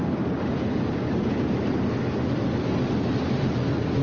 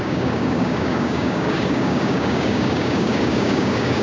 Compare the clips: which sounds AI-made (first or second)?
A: second